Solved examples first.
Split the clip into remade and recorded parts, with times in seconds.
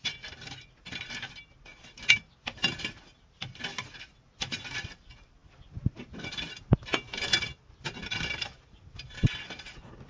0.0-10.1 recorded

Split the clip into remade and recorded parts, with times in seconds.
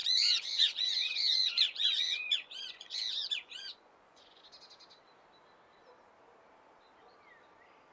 0.0-4.4 remade; 4.4-7.9 recorded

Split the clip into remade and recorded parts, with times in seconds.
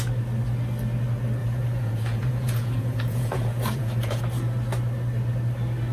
0.0-1.4 recorded; 1.4-4.2 remade; 4.2-5.9 recorded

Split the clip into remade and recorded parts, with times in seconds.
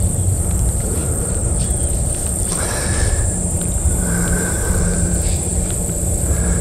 0.0-6.6 remade